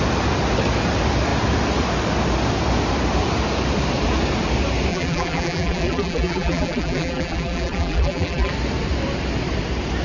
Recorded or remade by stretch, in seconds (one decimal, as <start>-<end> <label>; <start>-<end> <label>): 0.0-4.9 recorded; 4.9-8.5 remade; 8.5-10.0 recorded